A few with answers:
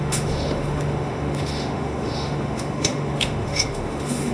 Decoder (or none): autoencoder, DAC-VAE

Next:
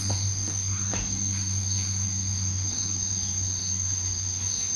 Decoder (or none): autoencoder, DAC-VAE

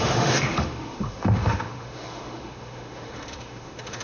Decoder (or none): autoencoder, DAC-VAE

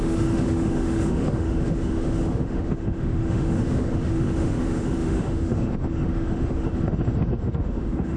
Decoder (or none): autoencoder, DAC-VAE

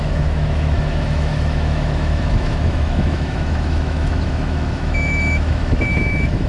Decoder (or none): autoencoder, DAC-VAE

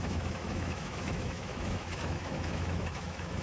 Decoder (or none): autoencoder, DAC-VAE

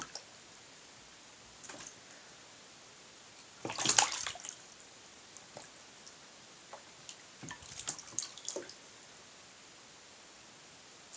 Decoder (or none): none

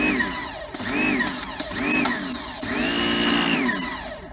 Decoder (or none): none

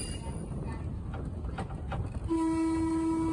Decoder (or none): none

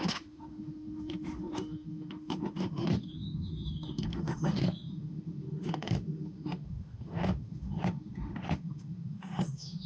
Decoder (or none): autoencoder, DAC-VAE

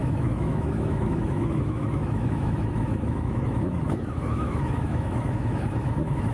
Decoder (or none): autoencoder, DAC-VAE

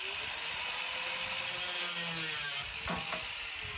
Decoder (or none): none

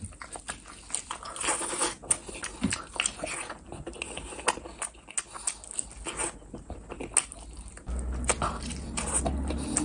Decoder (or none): none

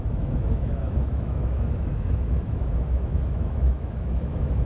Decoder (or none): autoencoder, DAC-VAE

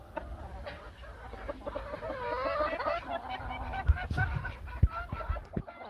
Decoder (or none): none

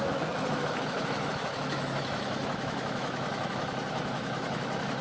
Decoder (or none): autoencoder, DAC-VAE